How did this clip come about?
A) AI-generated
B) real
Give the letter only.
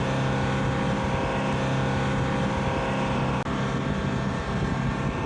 B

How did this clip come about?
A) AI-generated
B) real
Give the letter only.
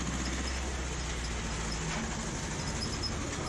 B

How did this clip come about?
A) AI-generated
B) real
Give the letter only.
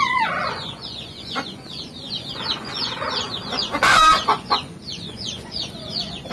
A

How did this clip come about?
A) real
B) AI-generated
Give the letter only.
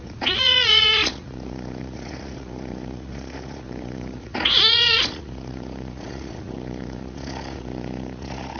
B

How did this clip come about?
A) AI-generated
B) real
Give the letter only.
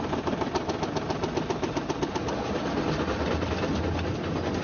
B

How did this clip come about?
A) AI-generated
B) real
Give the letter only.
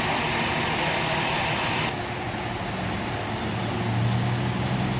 B